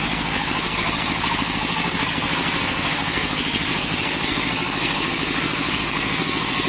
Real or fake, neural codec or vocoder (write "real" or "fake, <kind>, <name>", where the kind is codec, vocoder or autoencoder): fake, codec, SNAC